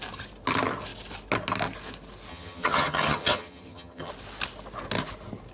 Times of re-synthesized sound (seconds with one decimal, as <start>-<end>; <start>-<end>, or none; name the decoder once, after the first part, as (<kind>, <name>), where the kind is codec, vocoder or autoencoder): 2.3-4.1 (vocoder, HiFi-GAN)